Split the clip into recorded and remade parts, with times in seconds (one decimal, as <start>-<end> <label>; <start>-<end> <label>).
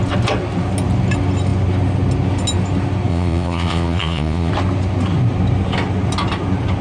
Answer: 0.0-3.1 recorded; 3.1-4.5 remade; 4.5-6.8 recorded